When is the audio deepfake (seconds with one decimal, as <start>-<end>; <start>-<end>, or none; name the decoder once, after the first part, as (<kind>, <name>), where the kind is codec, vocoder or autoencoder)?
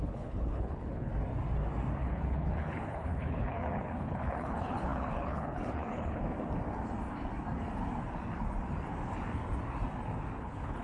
0.0-1.1 (codec, HILCodec); 2.0-6.2; 10.4-10.8